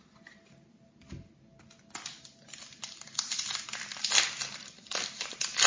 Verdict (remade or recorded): recorded